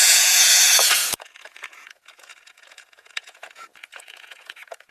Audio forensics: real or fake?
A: fake